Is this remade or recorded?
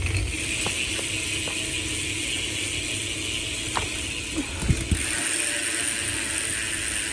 recorded